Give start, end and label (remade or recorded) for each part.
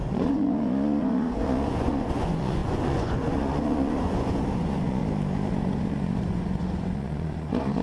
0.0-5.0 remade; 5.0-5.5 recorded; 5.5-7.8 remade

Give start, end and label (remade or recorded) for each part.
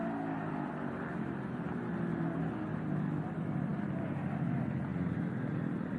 0.0-6.0 recorded